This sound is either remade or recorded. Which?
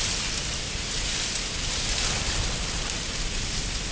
recorded